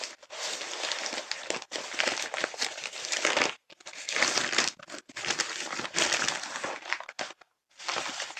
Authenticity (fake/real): real